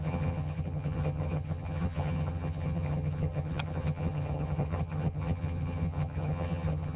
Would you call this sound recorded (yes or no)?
no